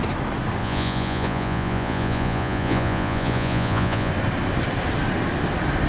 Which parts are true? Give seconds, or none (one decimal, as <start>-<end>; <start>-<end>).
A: 0.0-0.6; 4.1-5.9